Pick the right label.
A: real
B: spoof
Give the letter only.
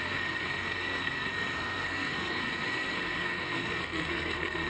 B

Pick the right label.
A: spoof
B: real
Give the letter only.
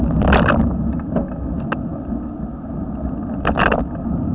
B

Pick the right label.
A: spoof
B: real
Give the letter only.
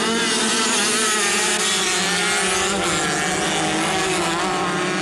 B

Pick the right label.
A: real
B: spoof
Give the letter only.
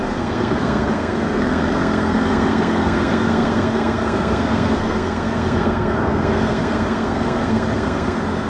B